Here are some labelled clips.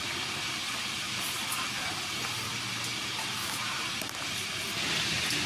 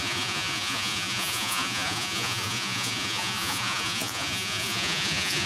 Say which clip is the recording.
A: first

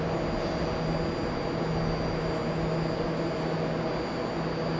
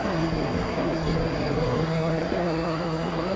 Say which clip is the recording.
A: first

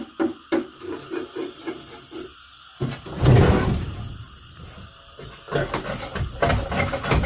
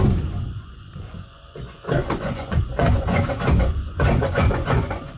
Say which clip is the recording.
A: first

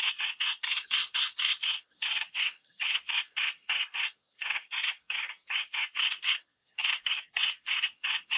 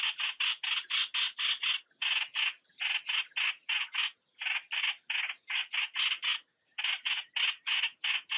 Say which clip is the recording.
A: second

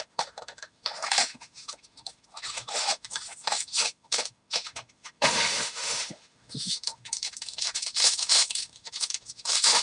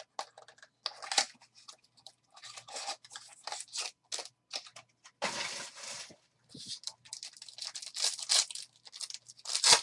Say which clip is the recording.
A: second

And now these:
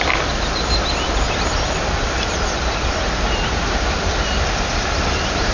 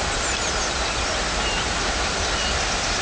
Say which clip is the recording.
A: second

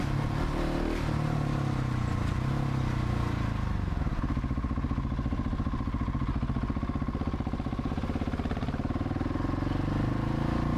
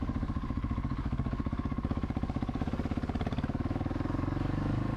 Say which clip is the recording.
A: first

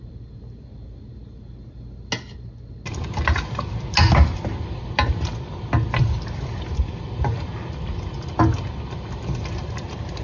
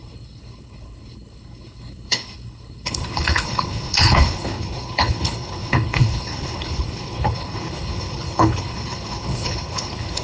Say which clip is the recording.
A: first